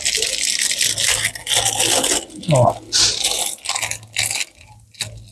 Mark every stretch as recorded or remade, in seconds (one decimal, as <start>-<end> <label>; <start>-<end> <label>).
0.0-5.3 recorded